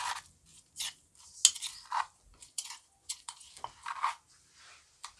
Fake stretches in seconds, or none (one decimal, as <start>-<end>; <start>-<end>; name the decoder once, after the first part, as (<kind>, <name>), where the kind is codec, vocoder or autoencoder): 0.5-1.1 (vocoder, Vocos); 2.3-3.5